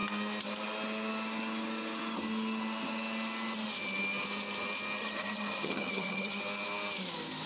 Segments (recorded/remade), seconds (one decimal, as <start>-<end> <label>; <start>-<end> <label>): 0.0-5.0 recorded; 5.0-6.4 remade; 6.4-7.5 recorded